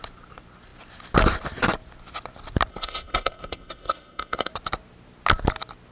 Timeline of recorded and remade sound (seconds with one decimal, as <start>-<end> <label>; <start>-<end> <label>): 0.0-2.7 recorded; 2.7-4.5 remade; 4.5-5.9 recorded